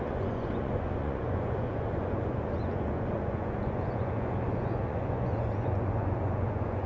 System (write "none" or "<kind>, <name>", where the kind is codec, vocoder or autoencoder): vocoder, Vocos